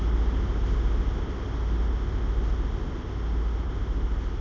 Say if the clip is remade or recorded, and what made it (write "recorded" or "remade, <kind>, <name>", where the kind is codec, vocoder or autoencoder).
recorded